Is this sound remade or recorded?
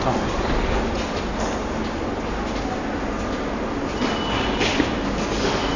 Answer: recorded